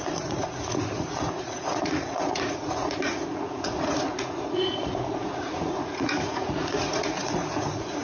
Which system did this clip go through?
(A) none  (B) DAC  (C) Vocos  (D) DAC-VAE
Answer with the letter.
C